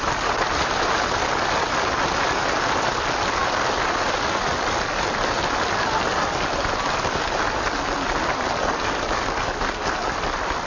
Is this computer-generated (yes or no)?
no